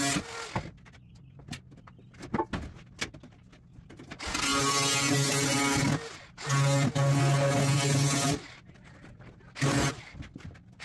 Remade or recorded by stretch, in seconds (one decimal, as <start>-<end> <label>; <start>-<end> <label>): 0.0-10.8 recorded